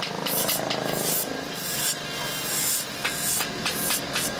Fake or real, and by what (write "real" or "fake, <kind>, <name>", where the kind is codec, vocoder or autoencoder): real